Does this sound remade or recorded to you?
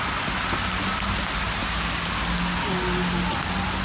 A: recorded